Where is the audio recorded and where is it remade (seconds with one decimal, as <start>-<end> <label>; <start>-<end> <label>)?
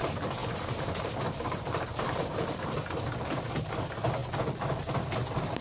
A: 0.0-0.4 recorded; 0.4-3.8 remade; 3.8-5.6 recorded